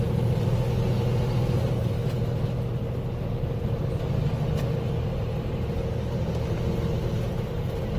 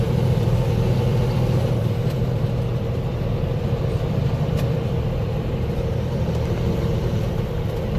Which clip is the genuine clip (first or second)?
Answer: first